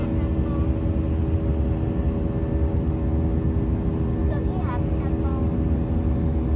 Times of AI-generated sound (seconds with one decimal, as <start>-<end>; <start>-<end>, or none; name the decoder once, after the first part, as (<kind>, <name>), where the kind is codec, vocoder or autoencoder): none

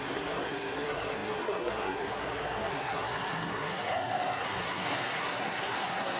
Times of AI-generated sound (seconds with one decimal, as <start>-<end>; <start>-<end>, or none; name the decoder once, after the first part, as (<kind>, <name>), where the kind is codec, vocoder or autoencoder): 0.0-6.2 (codec, SNAC)

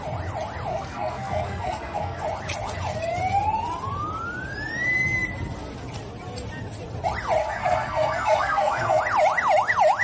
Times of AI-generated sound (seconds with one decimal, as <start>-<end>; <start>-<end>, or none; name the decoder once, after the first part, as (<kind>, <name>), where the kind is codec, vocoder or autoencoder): 0.7-2.2 (codec, SNAC); 7.4-9.0

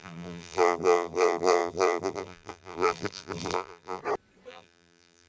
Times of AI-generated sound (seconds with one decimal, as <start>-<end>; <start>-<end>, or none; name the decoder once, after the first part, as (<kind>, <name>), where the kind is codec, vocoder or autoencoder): 0.0-4.0 (vocoder, BigVGAN v2); 4.5-5.3